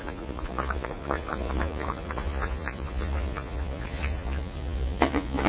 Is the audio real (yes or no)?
no